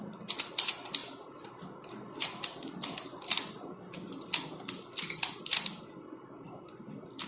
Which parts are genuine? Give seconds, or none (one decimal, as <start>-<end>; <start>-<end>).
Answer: 0.0-7.3